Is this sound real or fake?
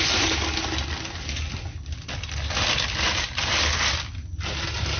real